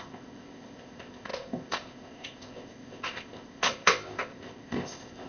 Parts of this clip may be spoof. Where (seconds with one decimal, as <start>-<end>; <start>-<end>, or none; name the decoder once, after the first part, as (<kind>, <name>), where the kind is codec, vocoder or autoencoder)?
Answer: 0.0-5.3 (codec, ZipCodec)